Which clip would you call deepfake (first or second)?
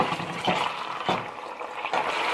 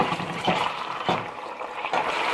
second